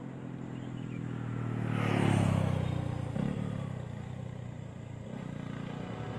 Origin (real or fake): real